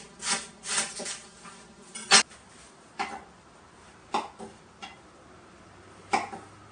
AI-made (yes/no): no